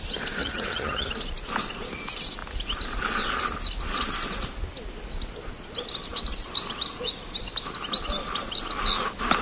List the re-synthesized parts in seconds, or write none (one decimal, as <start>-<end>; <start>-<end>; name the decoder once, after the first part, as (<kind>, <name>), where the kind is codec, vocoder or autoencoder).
0.4-1.1 (vocoder, HiFi-GAN)